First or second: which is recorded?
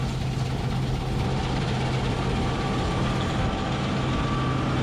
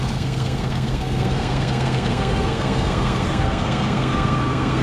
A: first